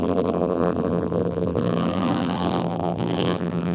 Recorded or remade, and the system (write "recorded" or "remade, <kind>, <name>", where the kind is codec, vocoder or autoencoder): remade, vocoder, BigVGAN v2